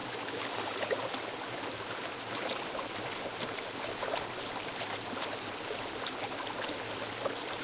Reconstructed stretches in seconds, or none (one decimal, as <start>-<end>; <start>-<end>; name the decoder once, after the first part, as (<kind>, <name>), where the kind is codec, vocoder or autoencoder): none